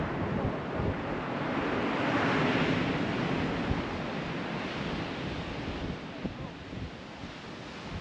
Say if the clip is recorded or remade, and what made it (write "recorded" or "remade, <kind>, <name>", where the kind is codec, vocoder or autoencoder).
recorded